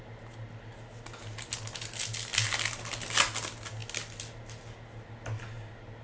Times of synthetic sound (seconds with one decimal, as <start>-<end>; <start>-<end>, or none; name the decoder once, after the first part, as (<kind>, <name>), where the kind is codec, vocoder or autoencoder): none